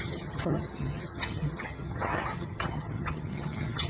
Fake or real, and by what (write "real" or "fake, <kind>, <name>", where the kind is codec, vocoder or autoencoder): fake, vocoder, HiFi-GAN